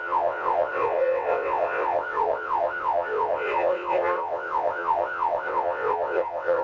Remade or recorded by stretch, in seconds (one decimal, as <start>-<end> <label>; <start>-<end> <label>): 0.0-6.6 remade